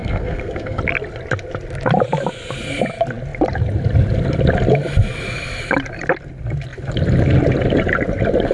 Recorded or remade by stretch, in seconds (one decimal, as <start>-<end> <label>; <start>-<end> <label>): 0.0-0.8 remade; 0.8-8.5 recorded

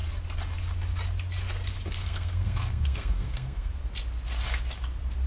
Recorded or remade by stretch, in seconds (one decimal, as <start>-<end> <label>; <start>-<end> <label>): 0.0-2.0 recorded; 2.0-3.7 remade; 3.7-5.3 recorded

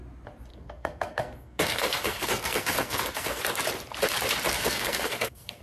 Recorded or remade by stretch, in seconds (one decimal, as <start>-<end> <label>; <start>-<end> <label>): 0.0-0.5 recorded; 0.5-3.4 remade; 3.4-4.5 recorded; 4.5-5.6 remade

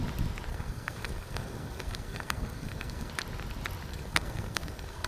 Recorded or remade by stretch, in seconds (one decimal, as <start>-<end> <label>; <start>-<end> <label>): 0.0-0.5 recorded; 0.5-3.1 remade; 3.1-3.9 recorded; 3.9-5.1 remade

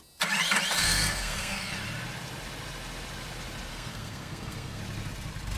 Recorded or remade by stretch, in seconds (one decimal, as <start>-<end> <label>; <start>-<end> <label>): 0.0-0.8 recorded; 0.8-1.7 remade; 1.7-3.7 recorded; 3.7-4.8 remade; 4.8-5.6 recorded